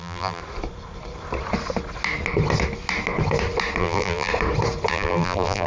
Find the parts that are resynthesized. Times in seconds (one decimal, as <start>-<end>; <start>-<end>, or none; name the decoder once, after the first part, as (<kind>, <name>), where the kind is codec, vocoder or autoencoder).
0.0-0.4 (vocoder, BigVGAN v2); 3.8-4.3; 4.9-5.7